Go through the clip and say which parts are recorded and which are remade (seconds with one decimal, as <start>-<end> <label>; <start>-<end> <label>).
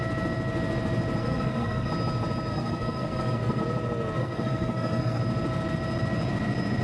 0.0-1.2 recorded; 1.2-1.9 remade; 1.9-2.5 recorded; 2.5-3.6 remade; 3.6-4.2 recorded; 4.2-5.2 remade; 5.2-6.8 recorded